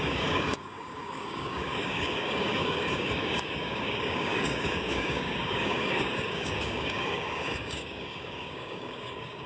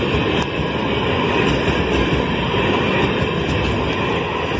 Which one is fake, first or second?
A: first